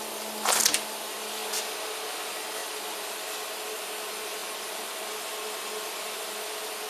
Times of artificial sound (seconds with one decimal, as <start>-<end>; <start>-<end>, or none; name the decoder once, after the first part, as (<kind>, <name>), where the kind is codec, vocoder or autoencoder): 2.6-3.2 (vocoder, BigVGAN v2)